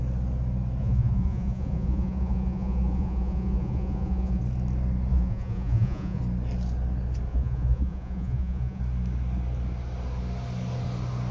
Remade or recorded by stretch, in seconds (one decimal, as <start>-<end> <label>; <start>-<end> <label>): 0.0-0.8 recorded; 0.8-4.4 remade; 4.4-5.1 recorded; 5.1-6.2 remade; 6.2-7.3 recorded; 7.3-8.8 remade; 8.8-11.3 recorded